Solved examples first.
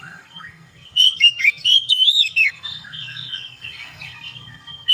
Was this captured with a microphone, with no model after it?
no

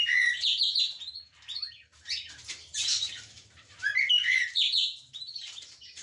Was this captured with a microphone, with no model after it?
no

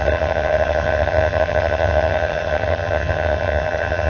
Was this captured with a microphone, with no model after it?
no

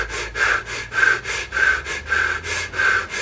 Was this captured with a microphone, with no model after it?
yes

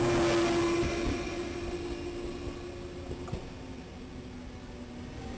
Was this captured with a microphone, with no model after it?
yes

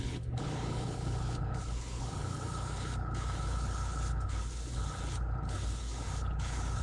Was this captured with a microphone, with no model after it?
no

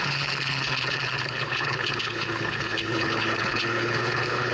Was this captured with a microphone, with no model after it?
no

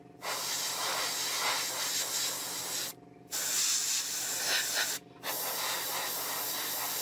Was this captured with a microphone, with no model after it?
yes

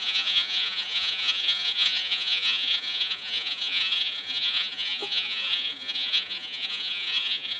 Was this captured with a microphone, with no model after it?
no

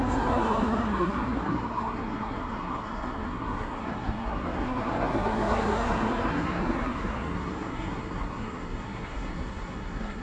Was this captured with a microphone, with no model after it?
no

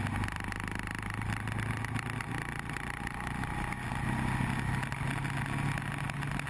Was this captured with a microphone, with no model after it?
yes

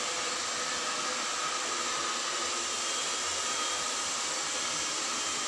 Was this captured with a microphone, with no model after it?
yes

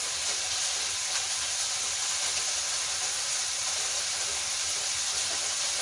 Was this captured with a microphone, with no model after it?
yes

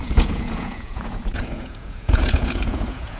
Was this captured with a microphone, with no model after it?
no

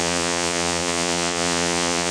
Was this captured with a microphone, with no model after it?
no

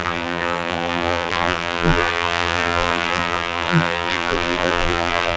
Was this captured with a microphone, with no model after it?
no